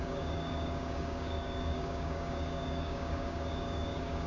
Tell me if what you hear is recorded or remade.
remade